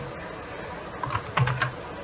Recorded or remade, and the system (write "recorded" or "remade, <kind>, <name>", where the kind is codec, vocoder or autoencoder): recorded